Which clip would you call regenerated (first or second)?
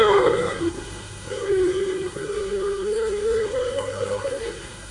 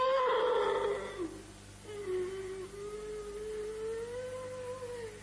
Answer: first